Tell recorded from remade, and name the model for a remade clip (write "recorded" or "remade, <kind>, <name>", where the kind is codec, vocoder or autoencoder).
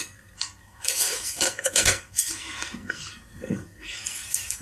remade, codec, SNAC